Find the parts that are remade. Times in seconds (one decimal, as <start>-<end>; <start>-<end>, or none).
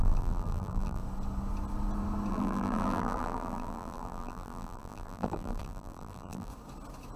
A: 0.0-1.0; 2.3-6.5